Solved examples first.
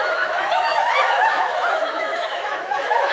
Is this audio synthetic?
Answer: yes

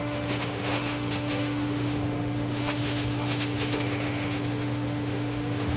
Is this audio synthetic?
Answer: yes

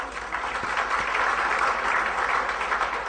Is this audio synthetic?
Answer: no